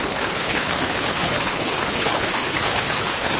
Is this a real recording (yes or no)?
no